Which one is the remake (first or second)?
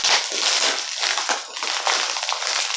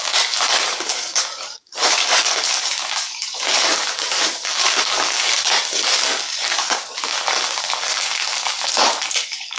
second